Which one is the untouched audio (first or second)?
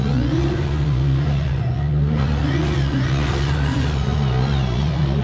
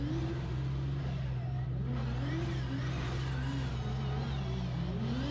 second